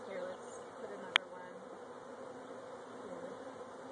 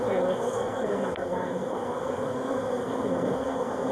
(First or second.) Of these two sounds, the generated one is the second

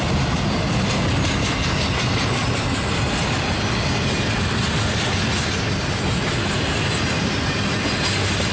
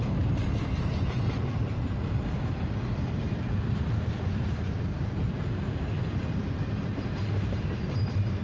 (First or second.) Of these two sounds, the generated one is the second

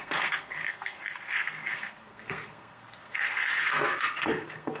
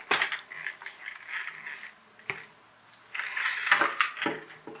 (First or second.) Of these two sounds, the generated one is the first